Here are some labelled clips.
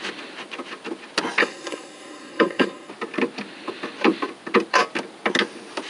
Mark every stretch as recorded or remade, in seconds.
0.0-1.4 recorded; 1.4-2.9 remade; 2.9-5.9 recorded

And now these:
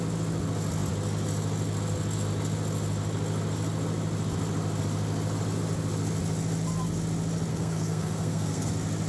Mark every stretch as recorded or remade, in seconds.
0.0-7.5 recorded; 7.5-8.7 remade; 8.7-9.1 recorded